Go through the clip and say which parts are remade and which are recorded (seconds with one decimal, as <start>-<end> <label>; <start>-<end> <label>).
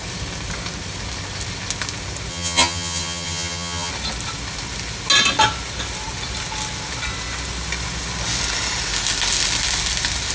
0.0-2.3 recorded; 2.3-3.9 remade; 3.9-10.3 recorded